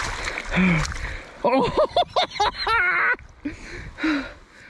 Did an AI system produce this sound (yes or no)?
no